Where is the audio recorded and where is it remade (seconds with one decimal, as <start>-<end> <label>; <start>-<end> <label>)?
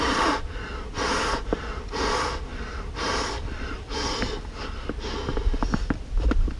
0.0-2.5 recorded; 2.5-4.2 remade; 4.2-5.3 recorded; 5.3-6.6 remade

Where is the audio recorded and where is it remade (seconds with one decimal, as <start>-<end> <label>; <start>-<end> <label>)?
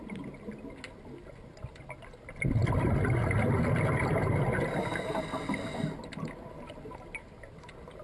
0.0-8.0 recorded